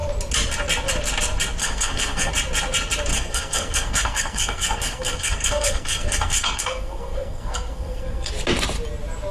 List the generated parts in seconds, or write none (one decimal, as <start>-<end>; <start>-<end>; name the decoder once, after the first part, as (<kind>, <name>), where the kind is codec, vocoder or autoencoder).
1.6-2.3 (codec, SNAC); 3.1-8.3